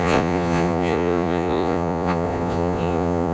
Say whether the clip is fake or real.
fake